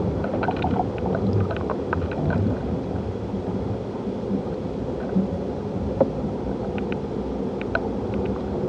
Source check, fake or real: real